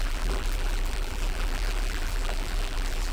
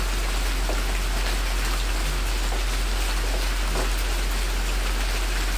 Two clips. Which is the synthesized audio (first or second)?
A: first